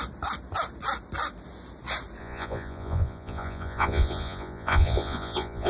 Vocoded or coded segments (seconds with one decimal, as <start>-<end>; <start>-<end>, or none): 2.2-5.7